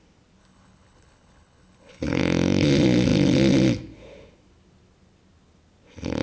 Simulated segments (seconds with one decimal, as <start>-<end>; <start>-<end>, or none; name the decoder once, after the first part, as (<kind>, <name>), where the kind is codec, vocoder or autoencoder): 0.4-2.2 (codec, HILCodec)